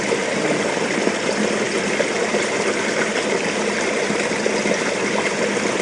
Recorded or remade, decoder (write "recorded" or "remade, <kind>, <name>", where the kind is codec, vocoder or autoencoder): recorded